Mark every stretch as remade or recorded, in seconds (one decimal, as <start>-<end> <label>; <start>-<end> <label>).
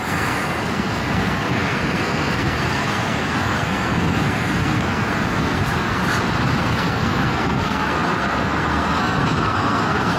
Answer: 0.0-6.0 remade; 6.0-6.6 recorded; 6.6-10.2 remade